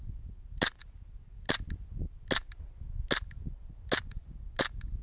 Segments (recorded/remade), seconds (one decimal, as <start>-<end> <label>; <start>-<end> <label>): 0.0-5.0 recorded